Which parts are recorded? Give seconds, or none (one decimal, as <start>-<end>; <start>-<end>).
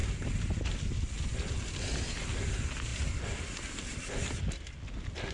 0.0-5.3